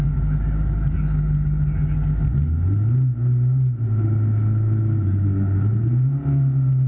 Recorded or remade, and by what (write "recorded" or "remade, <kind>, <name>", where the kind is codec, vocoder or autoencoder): recorded